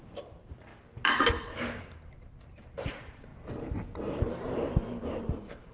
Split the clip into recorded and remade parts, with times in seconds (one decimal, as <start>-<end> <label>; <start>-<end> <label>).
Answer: 0.0-0.7 remade; 0.7-1.8 recorded; 1.8-3.3 remade; 3.3-4.1 recorded; 4.1-5.7 remade